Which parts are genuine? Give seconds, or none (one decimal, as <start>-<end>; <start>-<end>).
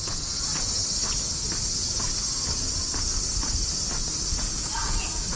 0.8-2.6; 3.1-4.4